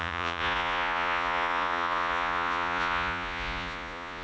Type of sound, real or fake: fake